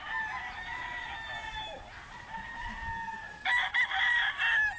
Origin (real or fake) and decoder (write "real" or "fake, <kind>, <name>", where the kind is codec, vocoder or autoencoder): real